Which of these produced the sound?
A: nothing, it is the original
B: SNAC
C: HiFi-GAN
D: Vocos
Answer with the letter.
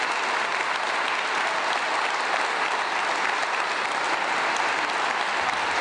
A